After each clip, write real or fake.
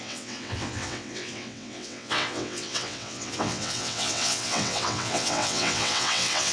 fake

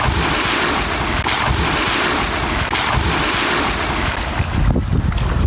real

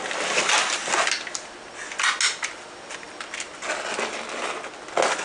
real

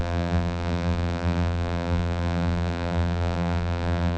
fake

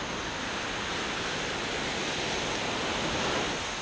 real